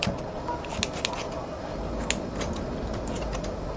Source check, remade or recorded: recorded